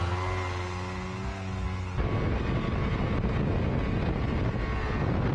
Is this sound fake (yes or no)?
no